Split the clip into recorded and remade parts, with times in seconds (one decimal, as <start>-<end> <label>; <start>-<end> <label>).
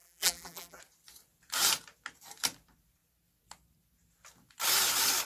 0.0-0.8 remade; 0.8-5.3 recorded